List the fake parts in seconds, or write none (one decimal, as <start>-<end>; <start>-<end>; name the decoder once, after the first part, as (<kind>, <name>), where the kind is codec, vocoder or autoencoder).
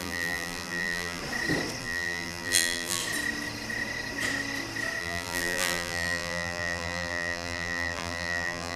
0.0-1.2 (vocoder, BigVGAN v2); 1.8-3.0; 5.0-8.8